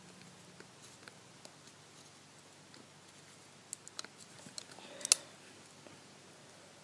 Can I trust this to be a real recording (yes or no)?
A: yes